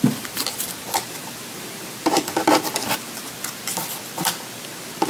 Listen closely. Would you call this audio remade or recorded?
recorded